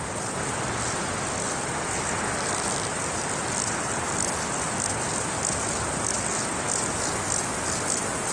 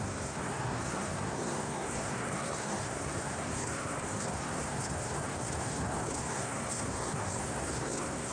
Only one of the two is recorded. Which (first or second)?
first